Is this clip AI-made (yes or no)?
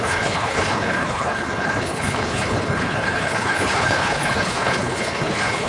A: yes